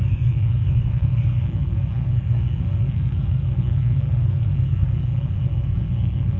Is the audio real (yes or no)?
no